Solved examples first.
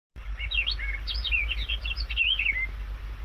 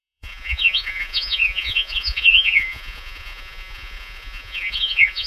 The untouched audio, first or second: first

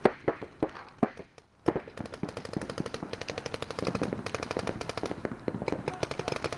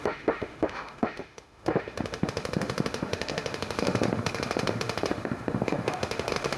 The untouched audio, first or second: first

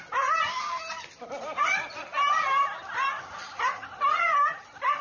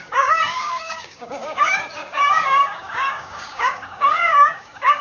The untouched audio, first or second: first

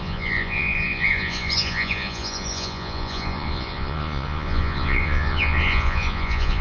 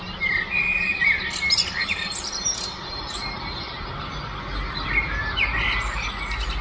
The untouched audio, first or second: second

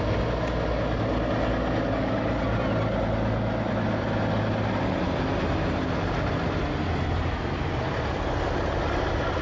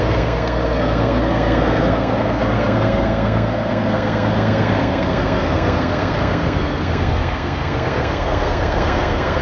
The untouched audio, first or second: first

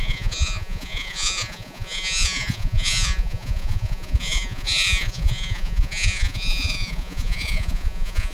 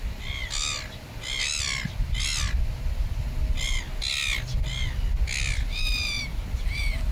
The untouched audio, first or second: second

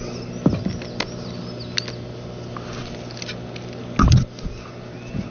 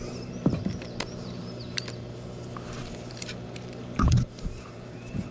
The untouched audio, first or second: first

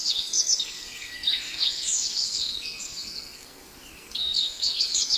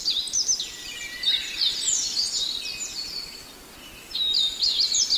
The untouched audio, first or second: second